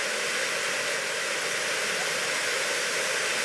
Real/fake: real